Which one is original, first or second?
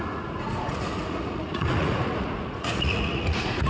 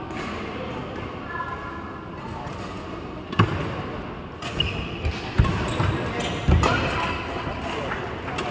second